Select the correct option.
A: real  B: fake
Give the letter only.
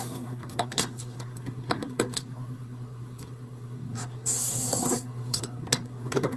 B